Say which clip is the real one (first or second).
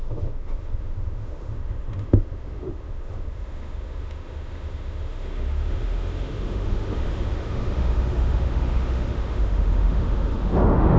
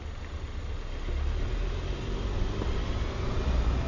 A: second